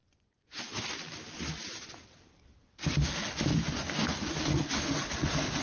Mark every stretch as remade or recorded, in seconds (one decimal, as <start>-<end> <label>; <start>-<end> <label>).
0.0-0.6 remade; 0.6-5.6 recorded